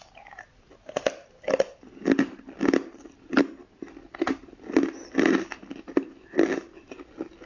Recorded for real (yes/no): yes